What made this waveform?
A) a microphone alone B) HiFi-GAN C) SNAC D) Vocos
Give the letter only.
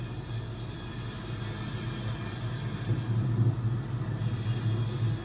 A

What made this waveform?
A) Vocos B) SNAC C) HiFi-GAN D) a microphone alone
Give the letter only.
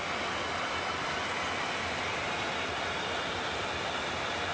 D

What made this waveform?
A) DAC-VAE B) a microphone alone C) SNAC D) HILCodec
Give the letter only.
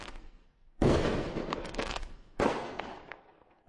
C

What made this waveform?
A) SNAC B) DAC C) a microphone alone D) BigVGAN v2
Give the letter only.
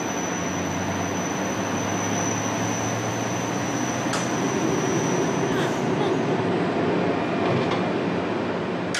C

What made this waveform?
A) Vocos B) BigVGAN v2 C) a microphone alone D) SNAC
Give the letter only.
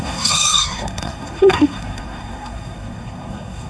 D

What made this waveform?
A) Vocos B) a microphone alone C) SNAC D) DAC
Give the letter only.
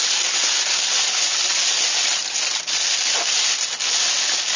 B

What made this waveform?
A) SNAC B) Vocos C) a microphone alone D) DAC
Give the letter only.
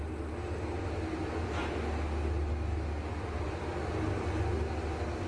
C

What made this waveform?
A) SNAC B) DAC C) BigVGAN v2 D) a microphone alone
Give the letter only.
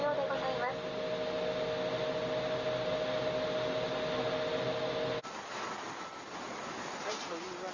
D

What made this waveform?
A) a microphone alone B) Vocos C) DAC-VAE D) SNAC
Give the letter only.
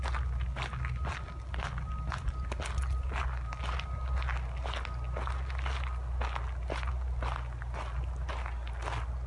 A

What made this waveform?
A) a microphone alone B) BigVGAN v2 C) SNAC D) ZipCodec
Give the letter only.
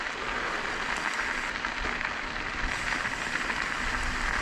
A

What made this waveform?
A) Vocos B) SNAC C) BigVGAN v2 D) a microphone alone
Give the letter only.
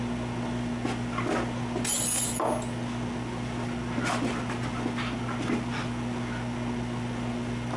D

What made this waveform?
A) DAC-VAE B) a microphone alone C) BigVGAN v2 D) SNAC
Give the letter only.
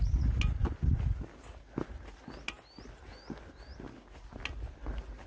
B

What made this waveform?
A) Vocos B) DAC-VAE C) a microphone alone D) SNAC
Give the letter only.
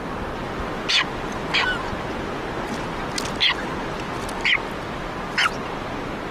C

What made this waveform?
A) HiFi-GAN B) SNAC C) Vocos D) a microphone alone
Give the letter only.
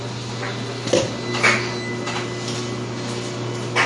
D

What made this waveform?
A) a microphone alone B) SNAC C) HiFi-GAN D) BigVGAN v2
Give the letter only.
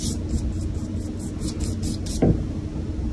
A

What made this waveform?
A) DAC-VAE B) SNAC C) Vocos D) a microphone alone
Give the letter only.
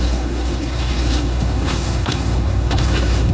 B